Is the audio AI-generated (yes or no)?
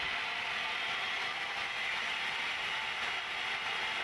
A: no